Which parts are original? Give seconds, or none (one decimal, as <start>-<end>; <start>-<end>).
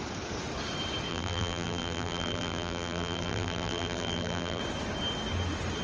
0.0-1.1; 4.6-5.8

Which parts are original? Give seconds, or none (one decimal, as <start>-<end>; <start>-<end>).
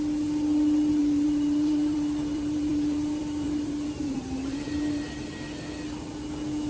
0.0-1.0; 5.0-6.7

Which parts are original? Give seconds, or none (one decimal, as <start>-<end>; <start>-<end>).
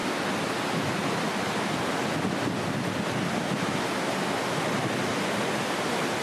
0.0-6.2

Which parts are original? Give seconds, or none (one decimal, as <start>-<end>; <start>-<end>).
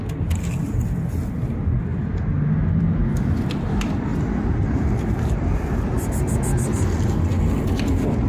0.0-8.3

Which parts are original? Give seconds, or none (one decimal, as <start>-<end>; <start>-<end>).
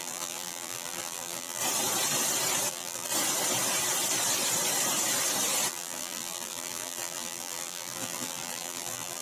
1.6-2.7; 3.1-5.7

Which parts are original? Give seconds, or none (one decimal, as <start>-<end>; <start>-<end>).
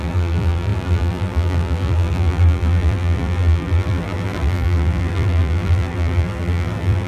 none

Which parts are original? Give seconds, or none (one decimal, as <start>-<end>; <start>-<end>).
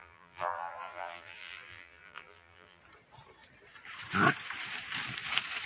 2.8-5.7